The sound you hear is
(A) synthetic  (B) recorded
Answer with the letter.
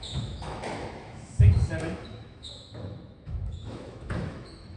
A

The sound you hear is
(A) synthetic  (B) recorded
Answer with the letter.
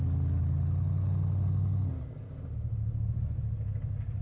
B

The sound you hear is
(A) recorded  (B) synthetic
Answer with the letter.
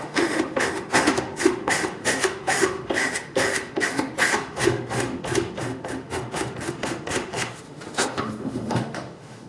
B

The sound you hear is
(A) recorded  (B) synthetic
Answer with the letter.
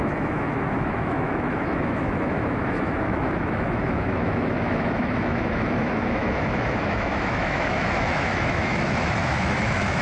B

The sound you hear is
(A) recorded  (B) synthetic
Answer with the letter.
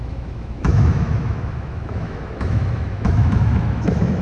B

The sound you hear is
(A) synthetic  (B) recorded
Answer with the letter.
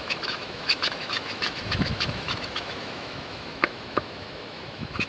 A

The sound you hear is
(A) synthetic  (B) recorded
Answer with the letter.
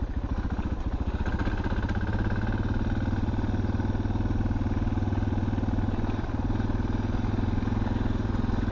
B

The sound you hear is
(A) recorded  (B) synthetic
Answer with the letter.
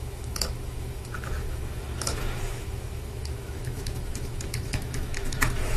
B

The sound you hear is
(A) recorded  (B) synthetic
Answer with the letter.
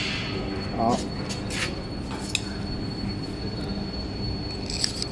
A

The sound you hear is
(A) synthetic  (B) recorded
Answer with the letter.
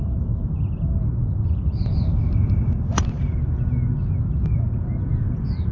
B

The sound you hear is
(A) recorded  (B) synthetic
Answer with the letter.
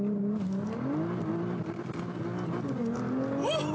A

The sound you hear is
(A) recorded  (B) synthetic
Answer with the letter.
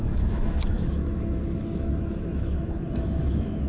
B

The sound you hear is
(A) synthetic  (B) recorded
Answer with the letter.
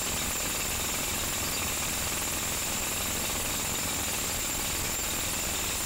B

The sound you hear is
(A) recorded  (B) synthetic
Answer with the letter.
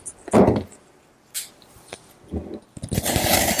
A